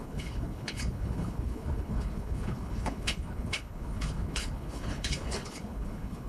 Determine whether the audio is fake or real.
fake